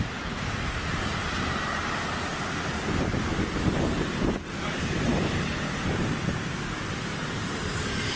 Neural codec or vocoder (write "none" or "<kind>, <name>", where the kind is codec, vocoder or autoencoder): vocoder, BigVGAN v2